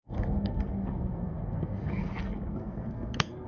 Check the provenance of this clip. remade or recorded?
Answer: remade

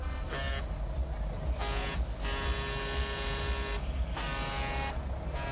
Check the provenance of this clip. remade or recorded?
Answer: recorded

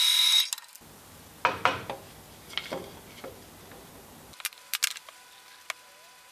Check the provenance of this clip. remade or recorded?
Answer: recorded